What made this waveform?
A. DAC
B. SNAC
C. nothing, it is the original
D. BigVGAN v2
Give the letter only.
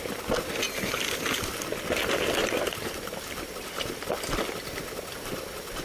C